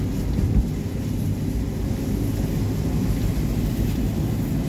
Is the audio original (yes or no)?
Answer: yes